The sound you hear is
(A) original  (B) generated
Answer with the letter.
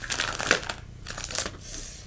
A